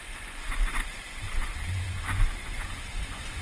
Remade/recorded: remade